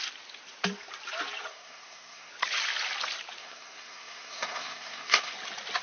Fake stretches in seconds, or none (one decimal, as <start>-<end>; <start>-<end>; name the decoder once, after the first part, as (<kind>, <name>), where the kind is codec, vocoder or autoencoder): 1.5-2.3 (codec, SNAC); 3.4-5.3